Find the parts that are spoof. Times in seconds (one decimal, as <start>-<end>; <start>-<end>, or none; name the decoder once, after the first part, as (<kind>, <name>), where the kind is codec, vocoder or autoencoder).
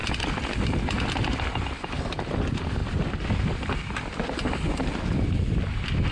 none